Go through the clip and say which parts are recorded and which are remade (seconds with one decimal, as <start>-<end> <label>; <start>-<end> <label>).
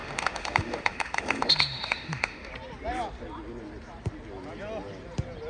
0.0-2.5 remade; 2.5-5.5 recorded